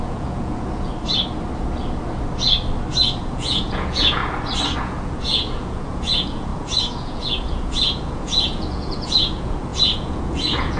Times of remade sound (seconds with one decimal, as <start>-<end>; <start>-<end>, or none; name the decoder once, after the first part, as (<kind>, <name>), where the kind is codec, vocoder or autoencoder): 0.0-0.9 (vocoder, Vocos); 3.2-4.2; 4.8-10.8

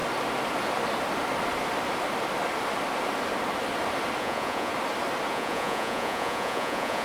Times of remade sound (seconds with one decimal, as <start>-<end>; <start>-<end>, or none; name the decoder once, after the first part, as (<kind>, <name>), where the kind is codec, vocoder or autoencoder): 4.2-4.7 (vocoder, Vocos); 5.3-7.0